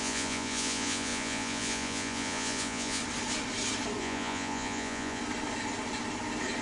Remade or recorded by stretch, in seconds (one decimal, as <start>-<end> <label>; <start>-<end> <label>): 0.0-3.0 remade; 3.0-4.0 recorded; 4.0-5.2 remade; 5.2-6.6 recorded